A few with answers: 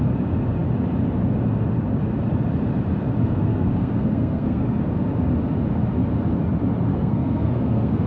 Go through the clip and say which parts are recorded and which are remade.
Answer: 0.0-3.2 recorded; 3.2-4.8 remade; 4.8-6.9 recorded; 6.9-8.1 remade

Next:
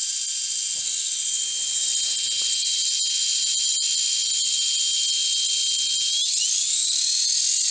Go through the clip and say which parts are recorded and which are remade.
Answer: 0.0-7.7 recorded

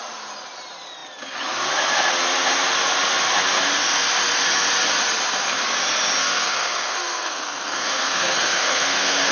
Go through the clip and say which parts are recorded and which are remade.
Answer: 0.0-6.2 recorded; 6.2-9.3 remade

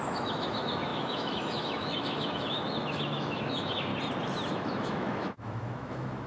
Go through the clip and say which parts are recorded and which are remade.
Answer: 0.0-3.9 remade; 3.9-4.5 recorded; 4.5-6.3 remade

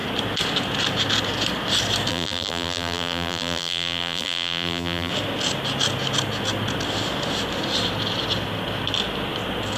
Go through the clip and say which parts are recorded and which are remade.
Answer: 0.0-2.1 recorded; 2.1-5.1 remade; 5.1-9.8 recorded

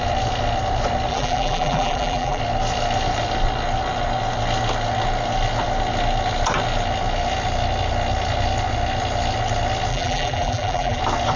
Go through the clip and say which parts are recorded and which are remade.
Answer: 0.0-1.1 recorded; 1.1-2.4 remade; 2.4-9.9 recorded; 9.9-11.0 remade; 11.0-11.4 recorded

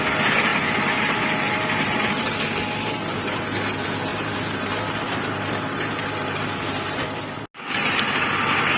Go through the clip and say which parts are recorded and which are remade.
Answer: 0.0-0.5 recorded; 0.5-3.4 remade; 3.4-4.1 recorded; 4.1-7.4 remade; 7.4-8.8 recorded